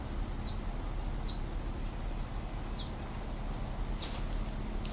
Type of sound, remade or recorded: recorded